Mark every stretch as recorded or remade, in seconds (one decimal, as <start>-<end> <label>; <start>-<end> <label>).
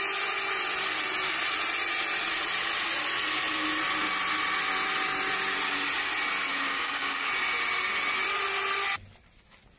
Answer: 0.0-6.5 recorded; 6.5-7.3 remade; 7.3-9.8 recorded